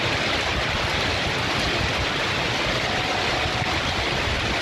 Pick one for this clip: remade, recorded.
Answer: recorded